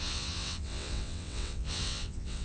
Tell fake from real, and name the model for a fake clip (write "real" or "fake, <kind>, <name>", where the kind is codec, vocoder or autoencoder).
fake, vocoder, WaveNeXt